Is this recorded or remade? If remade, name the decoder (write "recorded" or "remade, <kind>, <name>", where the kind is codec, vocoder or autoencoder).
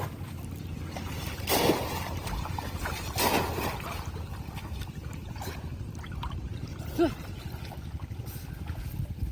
recorded